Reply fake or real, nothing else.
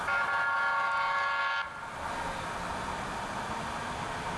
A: real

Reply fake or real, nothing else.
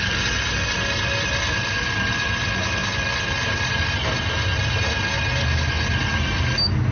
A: real